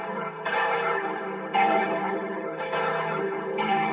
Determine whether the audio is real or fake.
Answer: fake